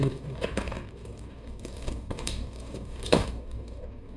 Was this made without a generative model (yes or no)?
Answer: no